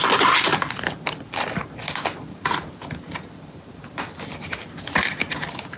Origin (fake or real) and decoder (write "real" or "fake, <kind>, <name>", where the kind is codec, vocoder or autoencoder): real